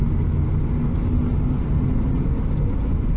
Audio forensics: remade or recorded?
recorded